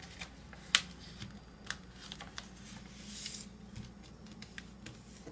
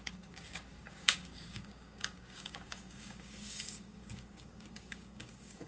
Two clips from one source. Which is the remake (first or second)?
second